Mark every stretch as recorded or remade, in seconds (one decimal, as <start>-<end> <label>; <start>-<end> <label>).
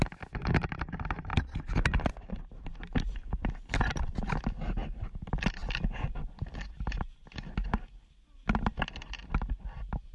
0.0-10.1 recorded